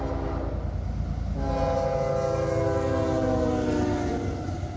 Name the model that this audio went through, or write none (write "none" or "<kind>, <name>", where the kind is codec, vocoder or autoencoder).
none